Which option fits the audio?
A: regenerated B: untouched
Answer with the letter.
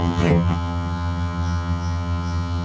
A